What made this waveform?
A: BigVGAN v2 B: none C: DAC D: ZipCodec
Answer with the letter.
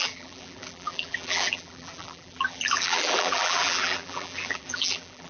A